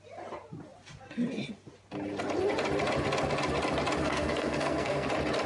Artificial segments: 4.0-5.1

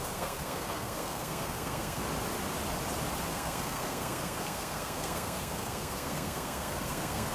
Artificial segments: 0.0-2.0; 3.3-7.3